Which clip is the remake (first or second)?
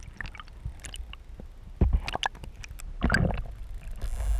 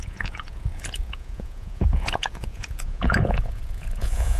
second